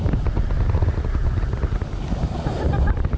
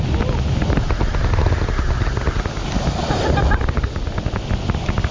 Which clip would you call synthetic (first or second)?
first